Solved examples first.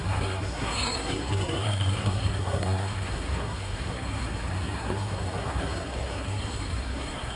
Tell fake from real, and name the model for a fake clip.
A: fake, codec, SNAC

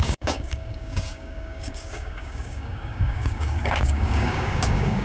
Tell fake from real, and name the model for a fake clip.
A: fake, codec, DAC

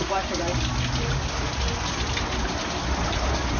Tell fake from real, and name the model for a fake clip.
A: real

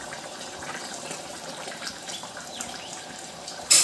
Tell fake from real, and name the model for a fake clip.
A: fake, vocoder, BigVGAN v2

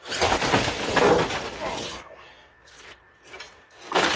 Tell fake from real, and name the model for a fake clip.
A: real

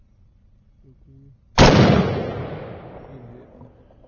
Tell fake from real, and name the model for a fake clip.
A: real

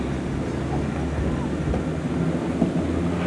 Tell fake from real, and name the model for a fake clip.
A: real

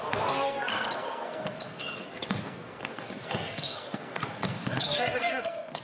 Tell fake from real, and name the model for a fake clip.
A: fake, codec, SNAC